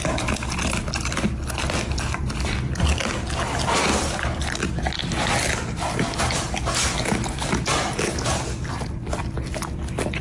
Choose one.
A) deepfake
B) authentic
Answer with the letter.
B